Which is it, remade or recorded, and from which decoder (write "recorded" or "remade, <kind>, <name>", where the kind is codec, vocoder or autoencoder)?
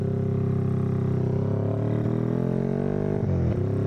recorded